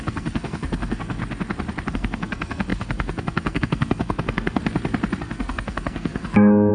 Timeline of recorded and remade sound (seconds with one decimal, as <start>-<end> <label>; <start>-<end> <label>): 0.0-1.2 remade; 1.2-1.9 recorded; 1.9-4.6 remade; 4.6-5.2 recorded; 5.2-6.7 remade